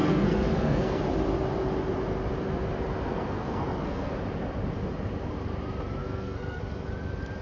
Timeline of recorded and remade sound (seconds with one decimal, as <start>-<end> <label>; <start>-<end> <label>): 0.0-1.0 remade; 1.0-3.1 recorded; 3.1-4.1 remade; 4.1-6.0 recorded; 6.0-6.6 remade; 6.6-7.4 recorded